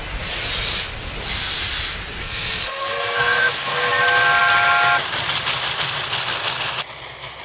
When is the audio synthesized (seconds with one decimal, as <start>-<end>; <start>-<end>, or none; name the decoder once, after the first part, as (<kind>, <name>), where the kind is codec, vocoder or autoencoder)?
2.2-3.9 (codec, SNAC)